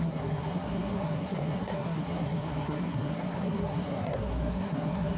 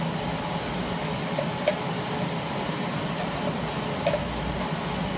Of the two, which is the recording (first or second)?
second